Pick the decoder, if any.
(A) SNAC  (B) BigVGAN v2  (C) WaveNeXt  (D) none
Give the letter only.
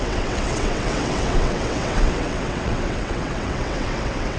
C